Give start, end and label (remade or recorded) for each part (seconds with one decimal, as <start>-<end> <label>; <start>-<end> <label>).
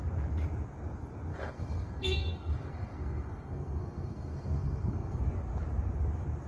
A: 0.0-1.3 recorded; 1.3-5.2 remade; 5.2-6.5 recorded